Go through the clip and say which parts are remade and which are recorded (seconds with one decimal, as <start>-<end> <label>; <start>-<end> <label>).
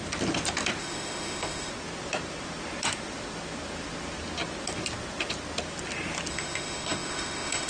0.0-0.8 recorded; 0.8-1.7 remade; 1.7-6.3 recorded; 6.3-7.7 remade